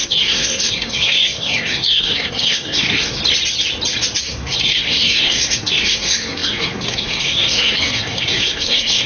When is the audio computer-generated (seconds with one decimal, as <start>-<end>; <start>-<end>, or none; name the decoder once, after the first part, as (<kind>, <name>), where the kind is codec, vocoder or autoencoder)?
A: 0.0-3.2 (codec, SNAC); 4.2-9.1